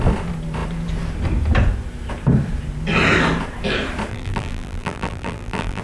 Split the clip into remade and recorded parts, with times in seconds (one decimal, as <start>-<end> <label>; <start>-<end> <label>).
0.0-4.1 recorded; 4.1-5.8 remade